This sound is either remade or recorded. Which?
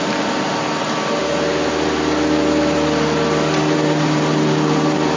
recorded